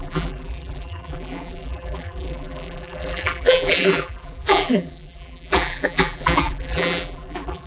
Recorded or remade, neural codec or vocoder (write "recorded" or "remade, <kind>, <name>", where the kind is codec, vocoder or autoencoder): remade, vocoder, BigVGAN v2